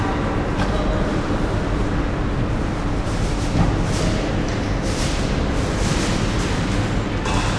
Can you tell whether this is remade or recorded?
recorded